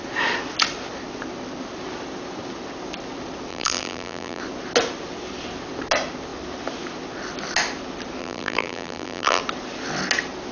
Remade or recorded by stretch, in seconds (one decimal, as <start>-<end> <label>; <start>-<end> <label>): 0.0-3.5 recorded; 3.5-4.4 remade; 4.4-8.2 recorded; 8.2-9.4 remade; 9.4-10.5 recorded